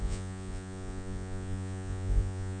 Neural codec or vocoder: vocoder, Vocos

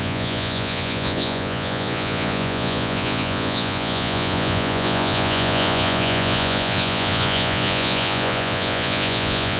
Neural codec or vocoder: vocoder, Vocos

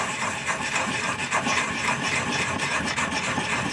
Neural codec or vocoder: vocoder, BigVGAN v2